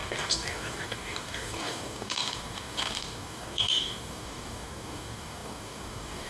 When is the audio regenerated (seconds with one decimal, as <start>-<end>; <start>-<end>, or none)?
0.0-6.3